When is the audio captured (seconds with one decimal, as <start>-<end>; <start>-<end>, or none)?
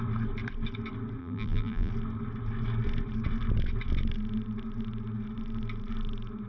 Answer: 0.0-1.2; 1.9-6.5